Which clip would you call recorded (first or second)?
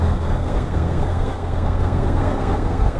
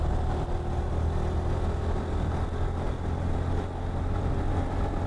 second